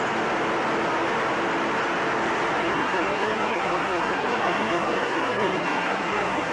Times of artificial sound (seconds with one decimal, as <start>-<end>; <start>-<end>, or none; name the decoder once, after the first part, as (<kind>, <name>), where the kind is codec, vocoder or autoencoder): 2.6-6.5 (codec, SNAC)